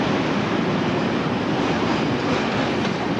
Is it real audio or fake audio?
real